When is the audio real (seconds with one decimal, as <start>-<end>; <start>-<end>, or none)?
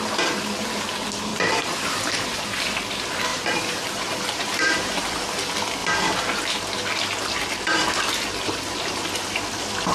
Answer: 0.0-1.3; 2.4-3.3; 5.3-9.9